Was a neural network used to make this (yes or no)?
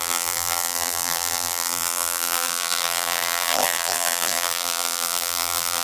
yes